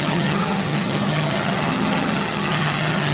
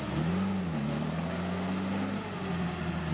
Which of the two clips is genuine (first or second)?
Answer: second